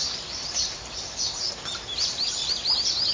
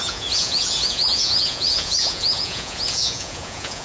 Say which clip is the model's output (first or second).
second